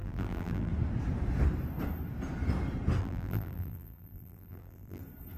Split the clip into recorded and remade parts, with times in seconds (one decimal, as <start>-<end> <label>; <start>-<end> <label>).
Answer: 0.0-0.7 remade; 0.7-3.0 recorded; 3.0-5.0 remade; 5.0-5.4 recorded